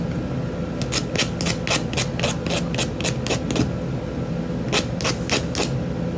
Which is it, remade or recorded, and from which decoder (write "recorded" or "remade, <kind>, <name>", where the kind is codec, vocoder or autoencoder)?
recorded